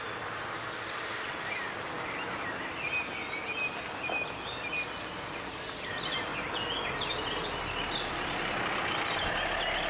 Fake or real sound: real